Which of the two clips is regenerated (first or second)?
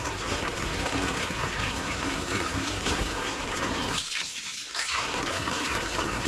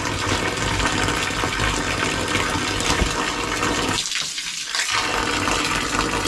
first